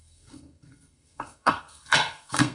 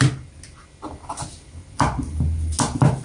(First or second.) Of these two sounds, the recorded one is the second